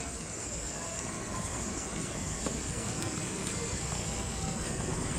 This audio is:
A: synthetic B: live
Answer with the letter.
A